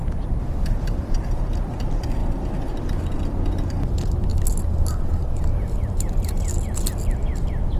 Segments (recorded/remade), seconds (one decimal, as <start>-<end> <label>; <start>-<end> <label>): 0.0-4.3 recorded; 4.3-6.4 remade; 6.4-7.8 recorded